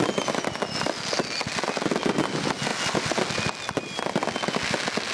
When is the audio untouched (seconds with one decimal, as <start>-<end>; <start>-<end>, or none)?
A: 0.0-5.1